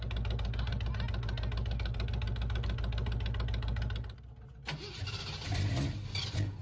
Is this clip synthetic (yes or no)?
no